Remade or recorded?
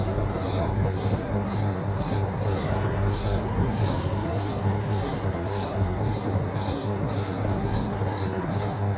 remade